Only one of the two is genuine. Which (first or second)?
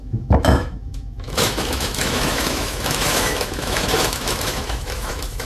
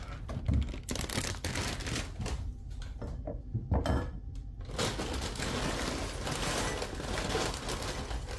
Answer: second